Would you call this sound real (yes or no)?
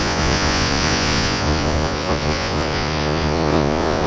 no